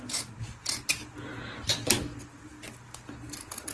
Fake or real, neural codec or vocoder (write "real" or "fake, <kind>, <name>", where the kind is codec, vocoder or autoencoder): real